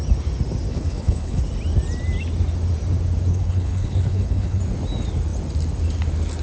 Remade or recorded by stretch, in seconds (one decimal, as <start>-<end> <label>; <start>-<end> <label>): 0.0-0.7 recorded; 0.7-1.4 remade; 1.4-3.3 recorded; 3.3-4.6 remade; 4.6-6.4 recorded